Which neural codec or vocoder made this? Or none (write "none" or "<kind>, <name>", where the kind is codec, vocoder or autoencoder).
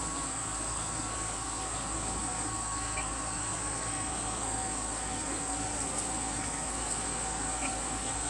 codec, SNAC